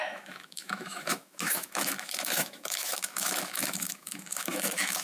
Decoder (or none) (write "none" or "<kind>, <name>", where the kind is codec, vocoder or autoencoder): autoencoder, DAC-VAE